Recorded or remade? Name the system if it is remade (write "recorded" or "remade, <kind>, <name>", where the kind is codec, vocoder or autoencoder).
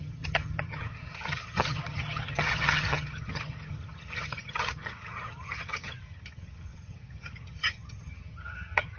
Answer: remade, vocoder, HiFi-GAN